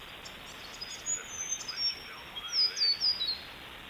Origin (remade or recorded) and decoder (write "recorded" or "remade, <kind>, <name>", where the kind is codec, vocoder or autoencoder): recorded